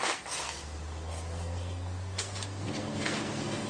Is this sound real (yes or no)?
no